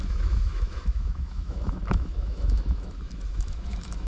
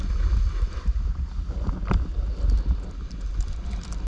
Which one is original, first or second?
second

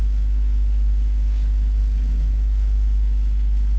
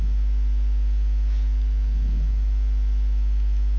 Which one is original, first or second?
second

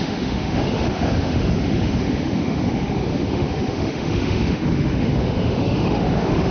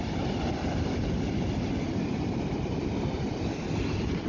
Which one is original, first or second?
second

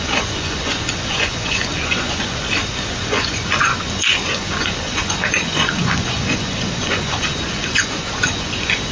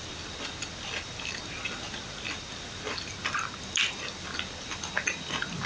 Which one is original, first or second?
second